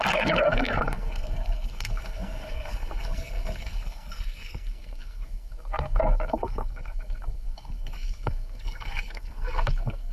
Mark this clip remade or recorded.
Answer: remade